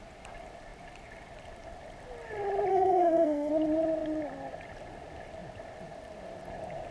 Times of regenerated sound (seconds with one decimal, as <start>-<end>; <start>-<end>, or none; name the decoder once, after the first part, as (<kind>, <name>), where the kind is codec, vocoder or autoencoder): 2.7-3.5 (codec, SNAC)